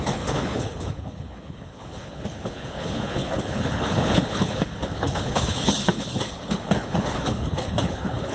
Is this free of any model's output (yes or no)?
no